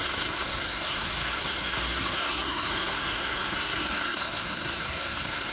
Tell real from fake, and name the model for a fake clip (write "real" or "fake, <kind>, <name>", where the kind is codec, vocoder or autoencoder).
fake, codec, SNAC